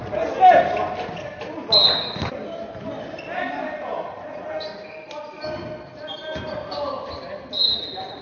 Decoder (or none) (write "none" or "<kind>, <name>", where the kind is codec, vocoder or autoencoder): none